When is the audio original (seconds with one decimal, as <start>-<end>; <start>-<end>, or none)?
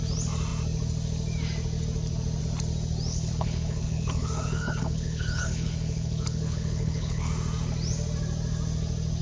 0.0-3.1; 7.3-9.2